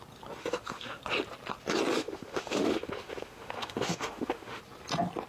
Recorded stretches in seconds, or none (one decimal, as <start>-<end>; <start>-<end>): 0.0-0.4; 1.0-2.0; 4.6-5.3